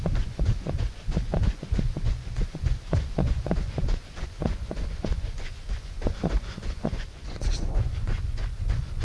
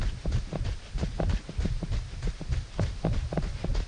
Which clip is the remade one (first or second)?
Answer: first